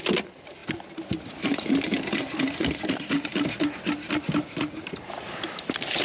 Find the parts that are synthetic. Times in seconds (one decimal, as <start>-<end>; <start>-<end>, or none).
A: none